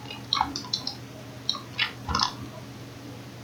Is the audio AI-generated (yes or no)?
no